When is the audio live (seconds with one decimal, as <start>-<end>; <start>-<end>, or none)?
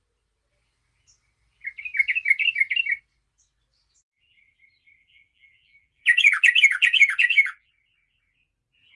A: 0.0-5.0; 7.7-9.0